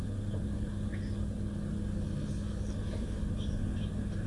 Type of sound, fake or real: real